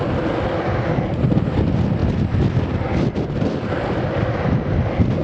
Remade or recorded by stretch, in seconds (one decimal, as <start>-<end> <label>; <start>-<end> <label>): 0.0-5.2 recorded